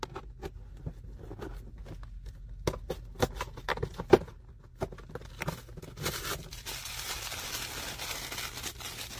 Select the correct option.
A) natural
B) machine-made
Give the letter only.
A